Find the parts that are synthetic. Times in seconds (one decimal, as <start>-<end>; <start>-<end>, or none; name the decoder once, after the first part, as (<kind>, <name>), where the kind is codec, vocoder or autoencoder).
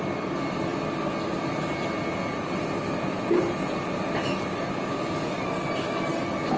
none